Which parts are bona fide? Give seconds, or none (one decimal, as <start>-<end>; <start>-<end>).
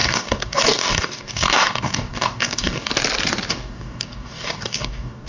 2.9-3.5